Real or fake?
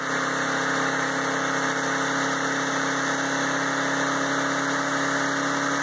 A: real